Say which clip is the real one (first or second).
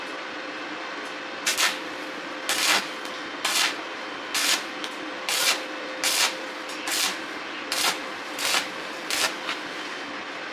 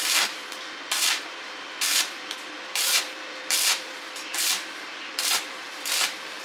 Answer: first